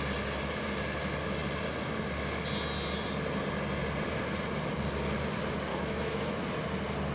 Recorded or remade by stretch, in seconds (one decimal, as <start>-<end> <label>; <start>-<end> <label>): 0.0-5.7 recorded; 5.7-6.4 remade; 6.4-7.1 recorded